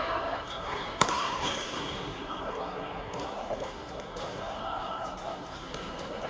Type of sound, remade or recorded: remade